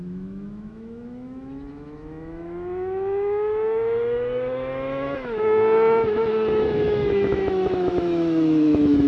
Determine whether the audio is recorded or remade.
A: remade